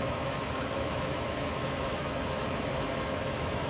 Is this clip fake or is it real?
fake